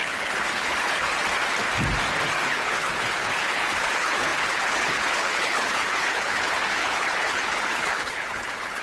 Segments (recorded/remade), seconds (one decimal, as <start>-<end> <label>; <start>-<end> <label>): 0.0-1.1 remade; 1.1-2.3 recorded; 2.3-8.8 remade